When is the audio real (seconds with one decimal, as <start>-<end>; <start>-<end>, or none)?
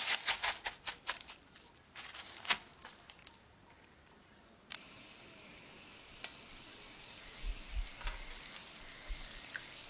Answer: 0.0-2.7; 5.6-9.9